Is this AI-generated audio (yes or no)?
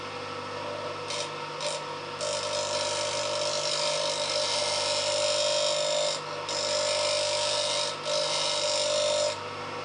no